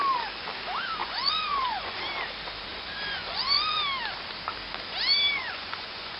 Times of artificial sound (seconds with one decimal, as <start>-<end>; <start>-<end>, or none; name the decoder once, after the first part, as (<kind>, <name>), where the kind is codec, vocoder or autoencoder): 1.0-2.0 (vocoder, Vocos); 2.7-3.8; 5.3-6.2